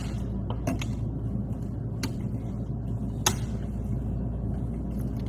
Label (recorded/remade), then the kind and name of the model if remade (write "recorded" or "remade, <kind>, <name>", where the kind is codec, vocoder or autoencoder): recorded